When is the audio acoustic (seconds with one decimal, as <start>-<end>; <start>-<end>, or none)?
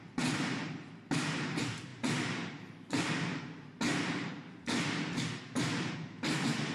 0.0-6.7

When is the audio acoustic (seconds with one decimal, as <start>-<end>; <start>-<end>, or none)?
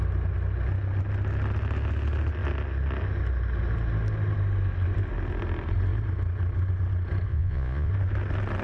0.0-7.3; 7.9-8.6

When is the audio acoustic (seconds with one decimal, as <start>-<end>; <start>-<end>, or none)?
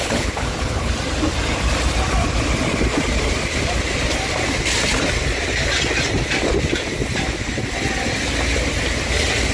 0.9-9.5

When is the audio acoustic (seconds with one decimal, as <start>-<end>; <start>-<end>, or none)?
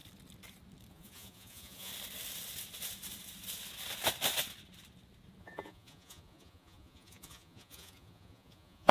0.0-0.9; 1.9-5.4